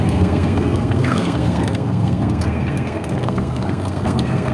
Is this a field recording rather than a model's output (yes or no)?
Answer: no